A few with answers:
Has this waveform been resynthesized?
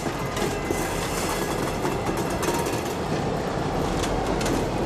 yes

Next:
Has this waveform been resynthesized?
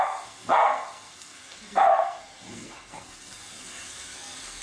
yes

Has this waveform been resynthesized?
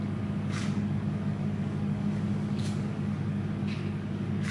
yes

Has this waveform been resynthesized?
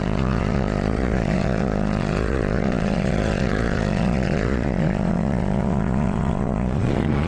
yes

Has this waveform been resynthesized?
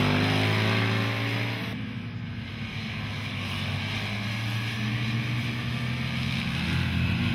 no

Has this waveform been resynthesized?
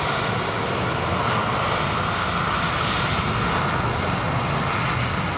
no